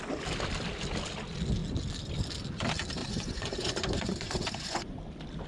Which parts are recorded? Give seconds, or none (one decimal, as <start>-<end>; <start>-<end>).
0.0-3.0; 5.0-5.5